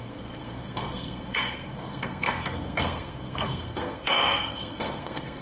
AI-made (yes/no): yes